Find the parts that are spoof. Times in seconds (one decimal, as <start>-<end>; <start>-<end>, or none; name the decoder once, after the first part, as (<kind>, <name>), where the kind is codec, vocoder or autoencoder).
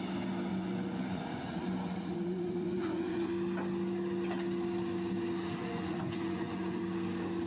0.5-3.3 (vocoder, Vocos); 5.6-6.8